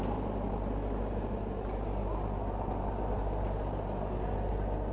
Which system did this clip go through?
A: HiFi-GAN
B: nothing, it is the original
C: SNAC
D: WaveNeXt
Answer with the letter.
B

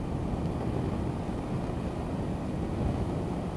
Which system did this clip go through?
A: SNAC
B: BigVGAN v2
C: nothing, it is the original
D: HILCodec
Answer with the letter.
C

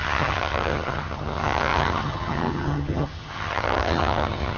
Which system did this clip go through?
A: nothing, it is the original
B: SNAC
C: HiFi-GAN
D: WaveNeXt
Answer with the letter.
C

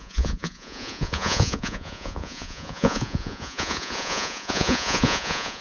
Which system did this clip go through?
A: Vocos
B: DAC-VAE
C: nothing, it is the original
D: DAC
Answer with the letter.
A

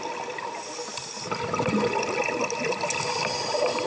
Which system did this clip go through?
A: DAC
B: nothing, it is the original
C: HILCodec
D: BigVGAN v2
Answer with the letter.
B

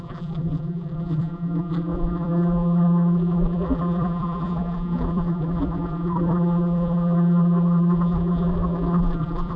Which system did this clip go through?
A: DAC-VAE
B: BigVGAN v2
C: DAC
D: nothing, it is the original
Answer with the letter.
B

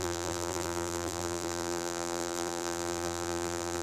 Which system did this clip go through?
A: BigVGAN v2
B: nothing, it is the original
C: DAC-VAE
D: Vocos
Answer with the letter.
A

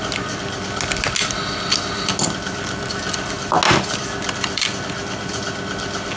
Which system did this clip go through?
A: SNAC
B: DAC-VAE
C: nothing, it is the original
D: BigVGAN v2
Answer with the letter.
C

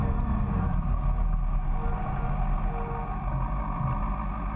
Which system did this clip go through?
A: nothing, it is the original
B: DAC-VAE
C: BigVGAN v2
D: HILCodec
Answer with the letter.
A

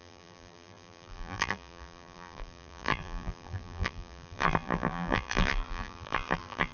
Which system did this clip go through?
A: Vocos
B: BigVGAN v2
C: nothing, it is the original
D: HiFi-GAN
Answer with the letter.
B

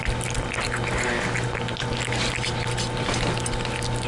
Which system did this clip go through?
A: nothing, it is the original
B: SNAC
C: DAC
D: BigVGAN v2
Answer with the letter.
A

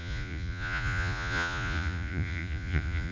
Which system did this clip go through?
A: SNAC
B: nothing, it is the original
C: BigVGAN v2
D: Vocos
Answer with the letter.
D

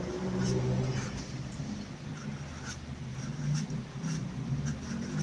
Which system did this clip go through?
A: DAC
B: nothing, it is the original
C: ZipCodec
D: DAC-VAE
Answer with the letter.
B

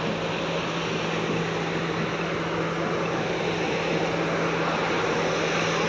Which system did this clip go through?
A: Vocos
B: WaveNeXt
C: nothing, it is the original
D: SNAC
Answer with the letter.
C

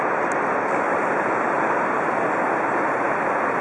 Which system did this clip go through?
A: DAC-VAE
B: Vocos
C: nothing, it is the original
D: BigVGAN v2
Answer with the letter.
C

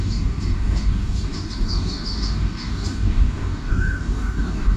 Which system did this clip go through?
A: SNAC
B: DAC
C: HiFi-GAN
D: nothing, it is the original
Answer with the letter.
B